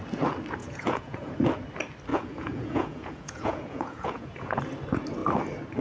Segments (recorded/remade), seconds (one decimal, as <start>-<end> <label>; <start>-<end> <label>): 0.0-0.6 recorded; 0.6-1.3 remade; 1.3-2.1 recorded; 2.1-4.6 remade; 4.6-5.8 recorded